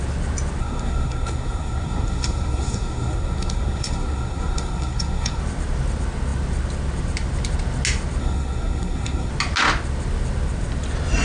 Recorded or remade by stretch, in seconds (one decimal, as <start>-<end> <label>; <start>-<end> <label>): 0.0-0.6 recorded; 0.6-5.4 remade; 5.4-8.2 recorded; 8.2-9.3 remade; 9.3-11.2 recorded